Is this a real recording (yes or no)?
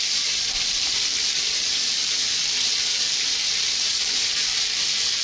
yes